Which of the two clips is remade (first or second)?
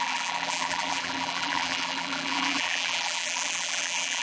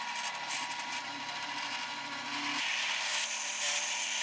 first